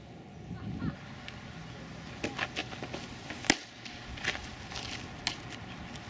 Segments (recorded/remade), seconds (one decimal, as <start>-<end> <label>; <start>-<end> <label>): 0.0-6.1 recorded